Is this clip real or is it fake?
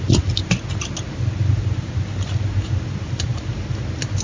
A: real